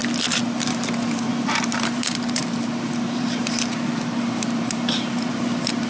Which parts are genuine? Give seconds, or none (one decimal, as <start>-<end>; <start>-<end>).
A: 0.0-0.7